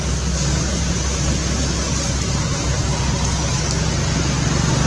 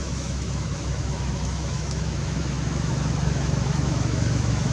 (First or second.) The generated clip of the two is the second